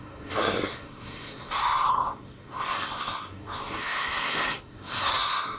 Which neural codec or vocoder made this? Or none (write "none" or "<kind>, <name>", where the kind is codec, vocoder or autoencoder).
codec, SNAC